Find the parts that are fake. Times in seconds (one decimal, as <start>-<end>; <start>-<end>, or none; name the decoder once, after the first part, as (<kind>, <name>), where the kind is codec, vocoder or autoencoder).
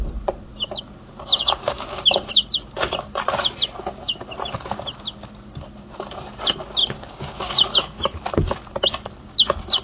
1.4-2.0 (codec, DAC); 6.8-7.5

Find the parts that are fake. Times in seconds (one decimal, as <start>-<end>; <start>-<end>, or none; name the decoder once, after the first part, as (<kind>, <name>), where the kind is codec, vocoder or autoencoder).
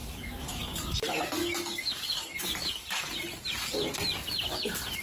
0.0-3.0 (codec, DAC)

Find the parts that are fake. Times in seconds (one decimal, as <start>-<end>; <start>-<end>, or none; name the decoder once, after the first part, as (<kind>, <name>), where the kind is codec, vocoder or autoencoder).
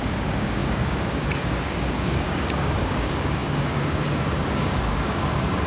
0.0-5.7 (codec, DAC)